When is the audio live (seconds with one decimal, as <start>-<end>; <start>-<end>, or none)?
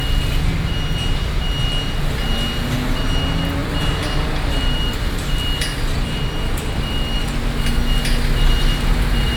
0.0-3.6; 7.2-9.4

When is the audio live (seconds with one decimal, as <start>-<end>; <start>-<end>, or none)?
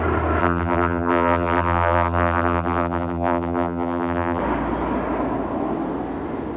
0.0-0.4; 4.4-6.6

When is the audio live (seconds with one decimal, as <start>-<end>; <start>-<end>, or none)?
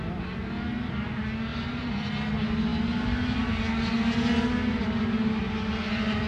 0.0-1.5; 2.3-5.4